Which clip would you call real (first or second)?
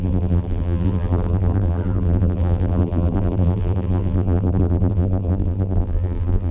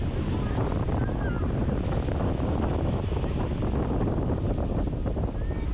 second